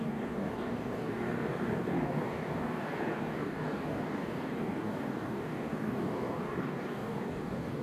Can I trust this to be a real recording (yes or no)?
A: no